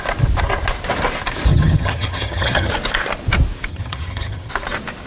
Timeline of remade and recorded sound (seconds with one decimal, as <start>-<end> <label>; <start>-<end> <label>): 0.0-1.5 recorded; 1.5-2.7 remade; 2.7-3.7 recorded; 3.7-4.5 remade; 4.5-5.1 recorded

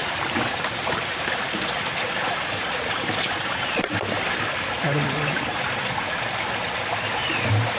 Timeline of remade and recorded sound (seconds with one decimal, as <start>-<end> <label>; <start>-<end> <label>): 0.0-7.8 recorded

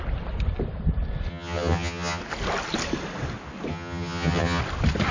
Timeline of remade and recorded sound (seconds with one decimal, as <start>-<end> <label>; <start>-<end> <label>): 0.0-1.3 recorded; 1.3-2.2 remade; 2.2-3.7 recorded; 3.7-4.6 remade; 4.6-5.1 recorded

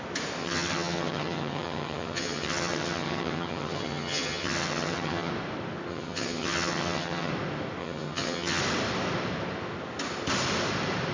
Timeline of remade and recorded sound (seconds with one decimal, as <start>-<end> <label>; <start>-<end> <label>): 0.0-0.4 recorded; 0.4-5.3 remade; 5.3-5.9 recorded; 5.9-7.3 remade; 7.3-7.8 recorded; 7.8-8.6 remade; 8.6-11.1 recorded

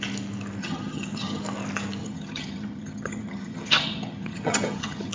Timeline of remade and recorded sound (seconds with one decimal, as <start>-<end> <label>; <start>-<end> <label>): 0.0-0.6 recorded; 0.6-1.4 remade; 1.4-2.0 recorded; 2.0-5.1 remade

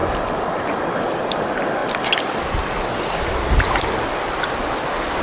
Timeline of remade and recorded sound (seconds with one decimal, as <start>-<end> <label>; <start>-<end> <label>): 0.0-5.2 recorded

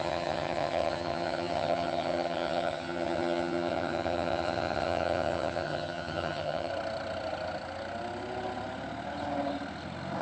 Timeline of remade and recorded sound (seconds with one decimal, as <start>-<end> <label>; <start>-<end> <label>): 0.0-6.7 remade; 6.7-10.2 recorded

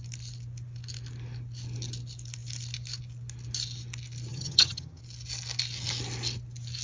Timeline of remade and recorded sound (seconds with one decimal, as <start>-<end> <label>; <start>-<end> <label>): 0.0-4.3 recorded; 4.3-5.0 remade; 5.0-6.8 recorded